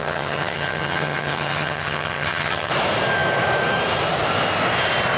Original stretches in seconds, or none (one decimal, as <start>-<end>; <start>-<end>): 2.7-5.2